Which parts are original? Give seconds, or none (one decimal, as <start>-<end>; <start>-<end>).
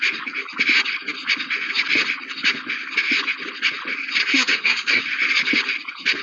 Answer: 0.0-4.2; 5.0-6.2